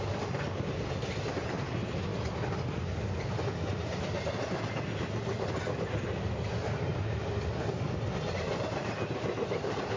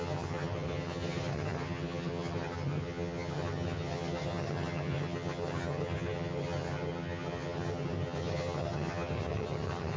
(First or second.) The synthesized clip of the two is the second